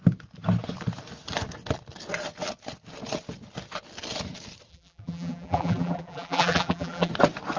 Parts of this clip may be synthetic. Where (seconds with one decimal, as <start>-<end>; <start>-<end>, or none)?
4.7-7.1